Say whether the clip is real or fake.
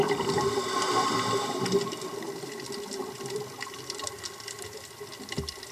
real